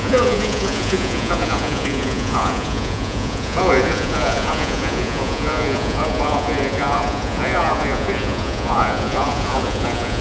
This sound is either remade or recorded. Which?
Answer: remade